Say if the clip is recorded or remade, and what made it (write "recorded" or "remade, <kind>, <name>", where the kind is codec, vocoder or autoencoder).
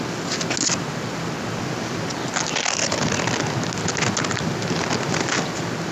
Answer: recorded